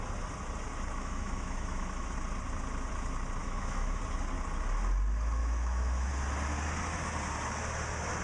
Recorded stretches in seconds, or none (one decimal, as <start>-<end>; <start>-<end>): 0.0-1.0; 2.1-3.4; 4.0-5.4; 6.1-8.2